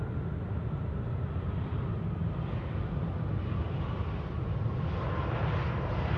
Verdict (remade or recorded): recorded